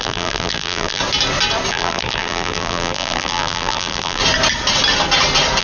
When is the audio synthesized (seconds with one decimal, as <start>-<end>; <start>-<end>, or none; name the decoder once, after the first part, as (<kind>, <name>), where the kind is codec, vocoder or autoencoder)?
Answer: 0.0-1.0 (vocoder, BigVGAN v2); 1.7-4.2